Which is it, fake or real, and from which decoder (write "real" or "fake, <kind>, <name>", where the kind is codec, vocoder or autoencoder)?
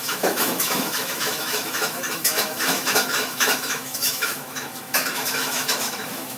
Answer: fake, autoencoder, DAC-VAE